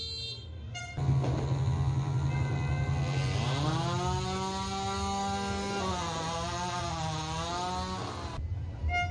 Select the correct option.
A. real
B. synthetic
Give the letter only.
A